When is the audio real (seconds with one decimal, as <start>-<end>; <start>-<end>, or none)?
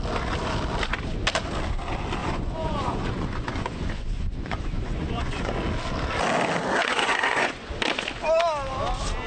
0.0-2.2; 5.6-6.8; 7.7-9.3